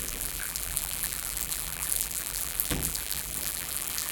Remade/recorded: remade